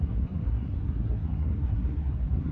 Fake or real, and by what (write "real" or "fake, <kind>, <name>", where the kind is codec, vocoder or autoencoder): fake, codec, SNAC